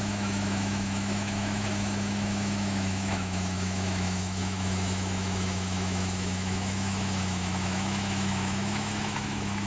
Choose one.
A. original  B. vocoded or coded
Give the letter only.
B